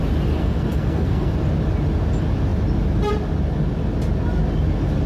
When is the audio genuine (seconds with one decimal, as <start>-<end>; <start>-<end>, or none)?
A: 0.0-0.4; 1.3-5.1